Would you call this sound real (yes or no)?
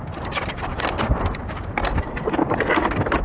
yes